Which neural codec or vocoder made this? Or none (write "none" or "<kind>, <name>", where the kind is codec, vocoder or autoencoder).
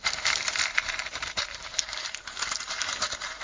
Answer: vocoder, BigVGAN v2